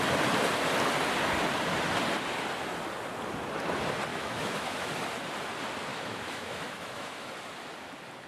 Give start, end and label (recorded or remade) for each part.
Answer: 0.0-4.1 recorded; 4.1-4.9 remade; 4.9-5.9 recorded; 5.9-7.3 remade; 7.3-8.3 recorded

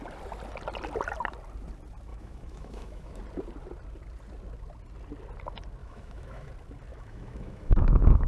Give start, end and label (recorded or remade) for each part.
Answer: 0.0-2.1 recorded; 2.1-3.2 remade; 3.2-5.8 recorded; 5.8-6.5 remade; 6.5-6.9 recorded; 6.9-8.3 remade

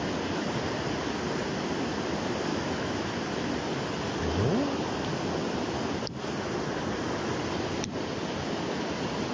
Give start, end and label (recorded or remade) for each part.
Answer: 0.0-2.5 recorded; 2.5-3.1 remade; 3.1-9.3 recorded

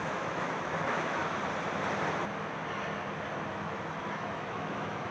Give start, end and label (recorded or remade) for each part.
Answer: 0.0-1.2 remade; 1.2-3.5 recorded; 3.5-5.1 remade

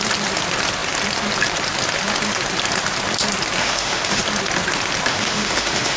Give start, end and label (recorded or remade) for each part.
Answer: 0.0-3.6 recorded; 3.6-4.2 remade; 4.2-5.1 recorded; 5.1-6.0 remade

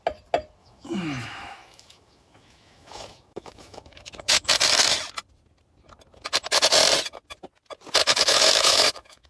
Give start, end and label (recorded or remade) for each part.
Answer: 0.0-0.6 recorded; 0.6-4.5 remade; 4.5-8.0 recorded; 8.0-9.3 remade